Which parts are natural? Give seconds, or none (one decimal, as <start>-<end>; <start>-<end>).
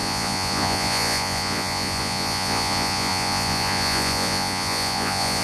none